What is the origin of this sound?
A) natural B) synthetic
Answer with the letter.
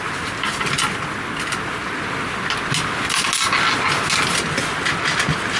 A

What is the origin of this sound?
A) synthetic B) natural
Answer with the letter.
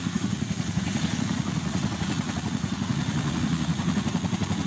A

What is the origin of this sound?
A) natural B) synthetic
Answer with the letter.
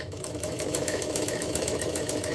B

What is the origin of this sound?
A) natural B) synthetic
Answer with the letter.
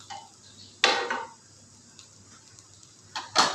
A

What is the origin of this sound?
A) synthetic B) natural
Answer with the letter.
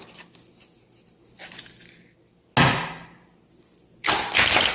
B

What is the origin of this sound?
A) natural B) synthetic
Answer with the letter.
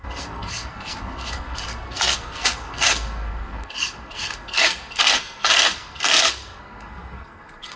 B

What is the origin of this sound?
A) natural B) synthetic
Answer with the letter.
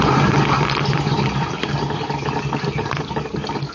A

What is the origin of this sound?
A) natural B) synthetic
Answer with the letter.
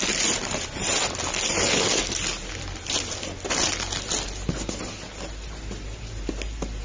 A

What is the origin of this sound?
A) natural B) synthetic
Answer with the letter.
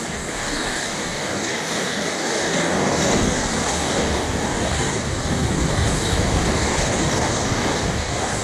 B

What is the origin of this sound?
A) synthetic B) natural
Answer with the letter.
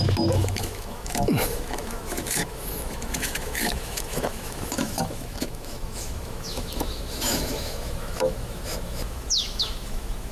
A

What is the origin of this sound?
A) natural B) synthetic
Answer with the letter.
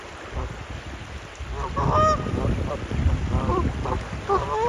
A